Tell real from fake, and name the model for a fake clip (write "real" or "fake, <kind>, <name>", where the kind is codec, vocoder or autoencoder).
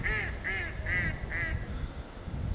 real